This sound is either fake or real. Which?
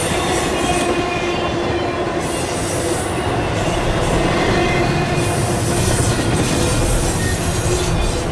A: real